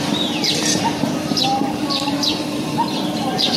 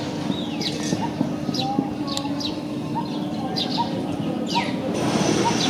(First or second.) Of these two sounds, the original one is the second